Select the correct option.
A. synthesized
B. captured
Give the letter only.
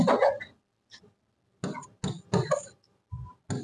B